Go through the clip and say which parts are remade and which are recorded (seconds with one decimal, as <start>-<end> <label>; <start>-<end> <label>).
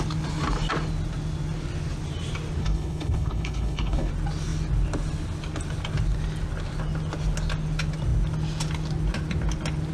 0.0-2.6 recorded; 2.6-4.1 remade; 4.1-9.9 recorded